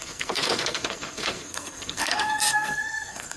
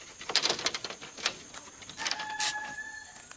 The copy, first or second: first